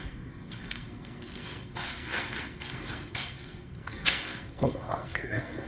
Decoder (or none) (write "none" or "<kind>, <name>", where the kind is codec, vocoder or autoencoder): codec, SNAC